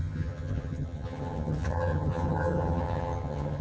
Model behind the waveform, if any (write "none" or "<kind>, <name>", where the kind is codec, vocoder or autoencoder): vocoder, HiFi-GAN